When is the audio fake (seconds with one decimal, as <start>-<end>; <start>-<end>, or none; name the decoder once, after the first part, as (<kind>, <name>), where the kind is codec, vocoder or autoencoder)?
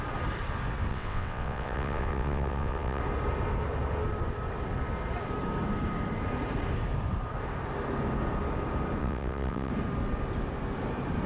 0.9-3.0 (vocoder, WaveNeXt); 9.0-9.7